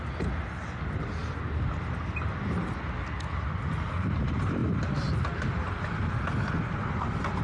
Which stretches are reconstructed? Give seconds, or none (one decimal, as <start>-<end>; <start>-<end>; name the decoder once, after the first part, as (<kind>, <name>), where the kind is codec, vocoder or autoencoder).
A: none